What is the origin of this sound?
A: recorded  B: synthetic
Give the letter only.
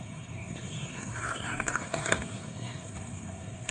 B